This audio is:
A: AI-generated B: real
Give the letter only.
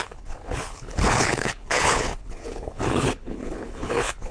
A